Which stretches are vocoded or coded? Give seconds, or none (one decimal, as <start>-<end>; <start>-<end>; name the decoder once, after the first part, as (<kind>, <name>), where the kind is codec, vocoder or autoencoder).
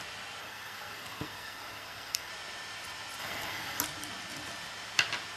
0.4-2.3 (codec, SNAC); 3.2-3.8